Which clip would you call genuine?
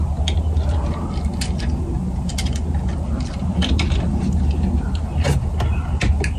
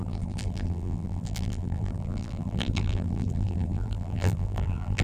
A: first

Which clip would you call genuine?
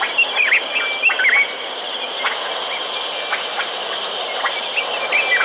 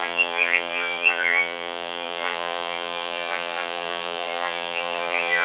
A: first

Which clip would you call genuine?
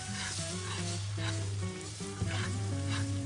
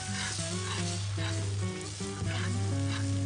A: second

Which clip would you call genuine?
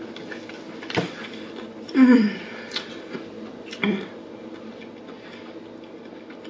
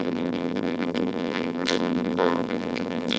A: first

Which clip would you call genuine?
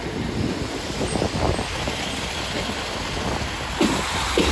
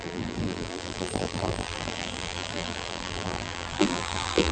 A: first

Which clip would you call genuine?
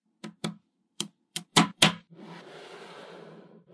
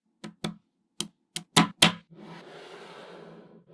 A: second